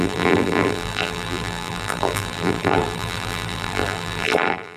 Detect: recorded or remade remade